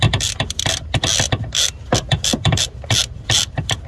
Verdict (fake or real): real